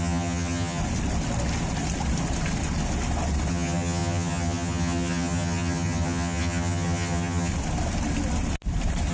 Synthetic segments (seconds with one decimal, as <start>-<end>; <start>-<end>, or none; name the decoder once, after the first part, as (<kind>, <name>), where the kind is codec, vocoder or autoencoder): 0.0-0.8 (vocoder, HiFi-GAN); 3.5-7.5